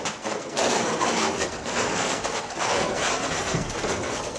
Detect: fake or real fake